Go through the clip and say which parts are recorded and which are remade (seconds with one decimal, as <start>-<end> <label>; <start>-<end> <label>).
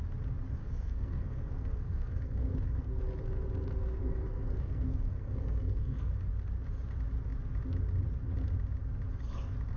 0.0-0.6 recorded; 0.6-3.0 remade; 3.0-3.7 recorded; 3.7-6.3 remade; 6.3-9.8 recorded